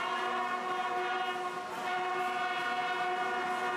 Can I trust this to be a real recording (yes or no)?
yes